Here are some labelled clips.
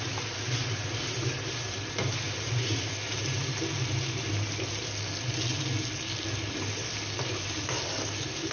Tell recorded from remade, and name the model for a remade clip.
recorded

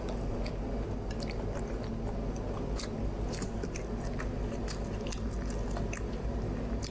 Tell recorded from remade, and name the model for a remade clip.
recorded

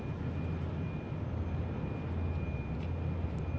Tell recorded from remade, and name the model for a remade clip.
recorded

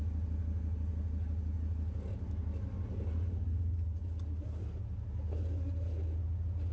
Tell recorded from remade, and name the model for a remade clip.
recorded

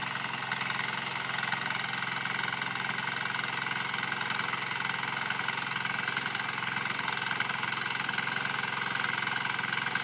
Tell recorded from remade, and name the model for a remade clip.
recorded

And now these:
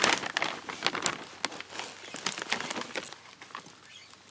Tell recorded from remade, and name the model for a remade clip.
recorded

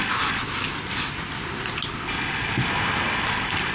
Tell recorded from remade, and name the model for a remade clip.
recorded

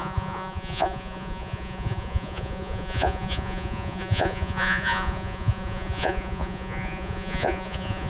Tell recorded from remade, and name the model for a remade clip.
remade, vocoder, Vocos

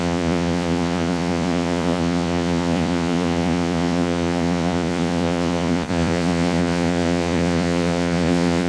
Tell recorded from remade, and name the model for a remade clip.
remade, vocoder, Vocos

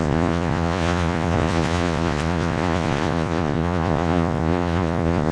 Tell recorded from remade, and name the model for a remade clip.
remade, vocoder, Vocos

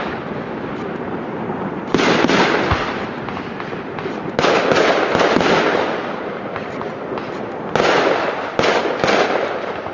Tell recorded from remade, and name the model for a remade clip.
recorded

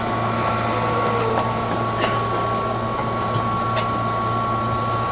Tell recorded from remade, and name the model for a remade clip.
recorded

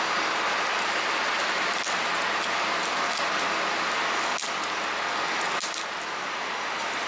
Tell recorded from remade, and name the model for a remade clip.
recorded